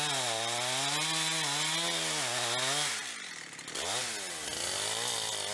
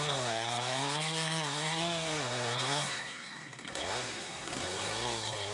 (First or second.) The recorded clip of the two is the first